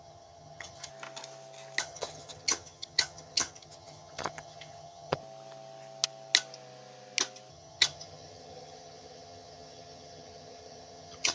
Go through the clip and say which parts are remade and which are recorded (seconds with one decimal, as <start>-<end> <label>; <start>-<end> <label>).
0.0-0.9 remade; 0.9-1.8 recorded; 1.8-5.2 remade; 5.2-7.5 recorded; 7.5-11.3 remade